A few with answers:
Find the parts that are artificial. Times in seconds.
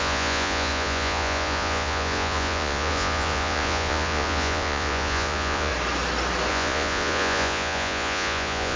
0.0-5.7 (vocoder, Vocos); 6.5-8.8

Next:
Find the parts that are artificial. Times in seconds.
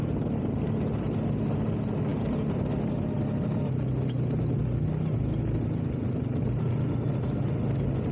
none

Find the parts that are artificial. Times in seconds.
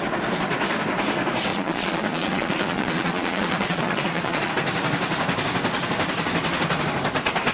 1.5-4.5 (vocoder, Vocos)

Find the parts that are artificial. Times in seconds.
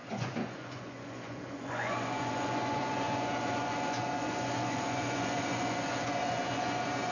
0.0-7.1 (vocoder, Vocos)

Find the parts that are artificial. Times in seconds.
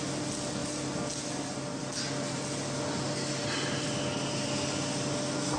none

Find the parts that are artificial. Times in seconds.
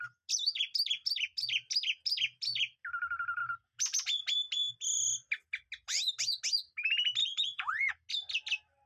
7.2-7.9 (vocoder, Vocos)